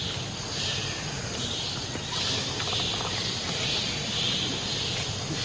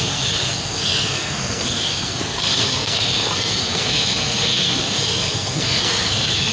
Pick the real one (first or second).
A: first